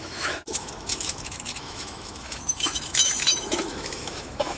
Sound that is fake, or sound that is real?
fake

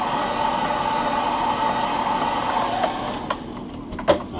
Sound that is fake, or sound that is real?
real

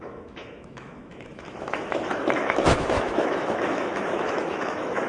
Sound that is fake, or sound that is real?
fake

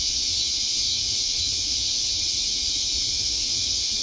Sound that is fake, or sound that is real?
fake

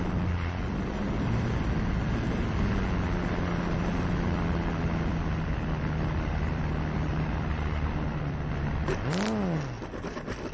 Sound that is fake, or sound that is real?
real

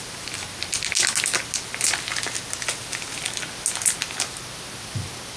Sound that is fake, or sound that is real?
real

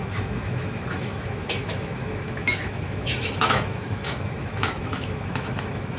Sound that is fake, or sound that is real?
fake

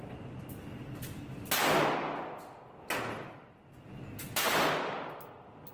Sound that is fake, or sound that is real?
real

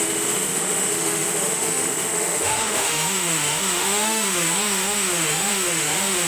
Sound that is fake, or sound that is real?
fake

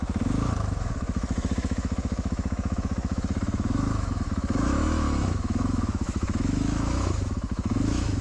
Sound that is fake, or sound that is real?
fake